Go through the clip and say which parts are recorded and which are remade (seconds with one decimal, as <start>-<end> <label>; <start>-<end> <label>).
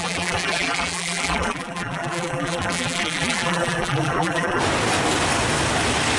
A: 0.0-4.6 remade; 4.6-6.2 recorded